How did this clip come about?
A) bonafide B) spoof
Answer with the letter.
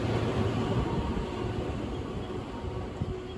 A